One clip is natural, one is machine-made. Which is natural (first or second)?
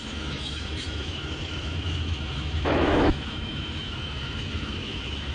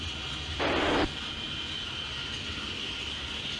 second